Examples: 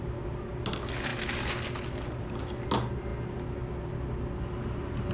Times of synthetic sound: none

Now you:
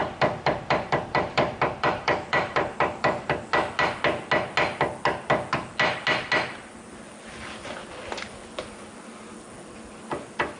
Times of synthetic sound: 0.0-3.0 (vocoder, BigVGAN v2)

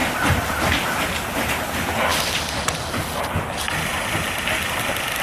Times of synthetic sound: 0.0-0.7 (vocoder, BigVGAN v2)

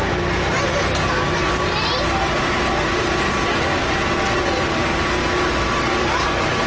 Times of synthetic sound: 0.0-4.0 (vocoder, BigVGAN v2); 5.7-6.7

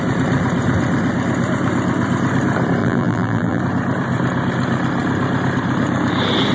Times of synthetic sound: 2.8-3.6 (vocoder, BigVGAN v2)